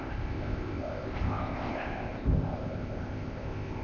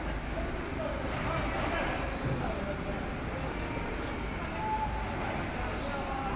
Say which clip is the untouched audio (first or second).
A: second